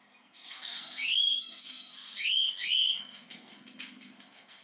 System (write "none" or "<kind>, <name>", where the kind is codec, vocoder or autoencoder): codec, SNAC